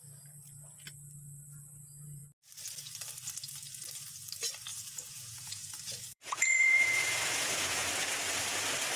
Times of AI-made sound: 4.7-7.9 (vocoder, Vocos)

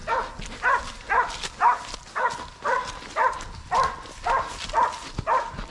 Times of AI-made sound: none